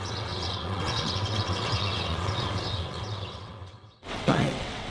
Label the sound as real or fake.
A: fake